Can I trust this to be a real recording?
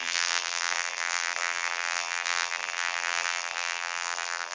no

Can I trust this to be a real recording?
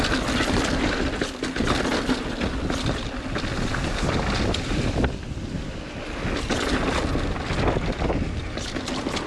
yes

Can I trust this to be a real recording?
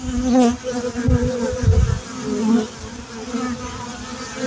yes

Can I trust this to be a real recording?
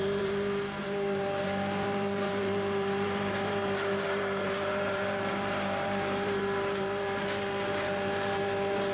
no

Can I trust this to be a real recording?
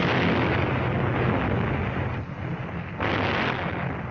yes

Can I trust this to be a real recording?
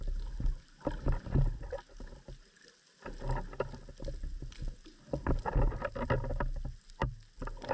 yes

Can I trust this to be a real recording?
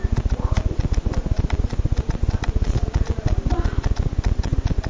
no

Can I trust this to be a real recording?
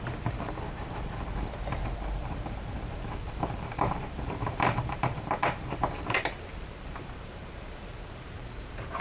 no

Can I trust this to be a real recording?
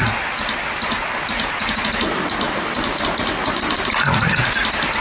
yes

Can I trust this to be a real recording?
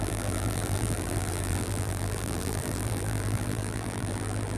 no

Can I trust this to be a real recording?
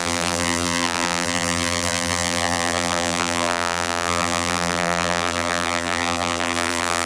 no